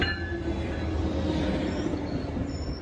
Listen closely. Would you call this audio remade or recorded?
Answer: recorded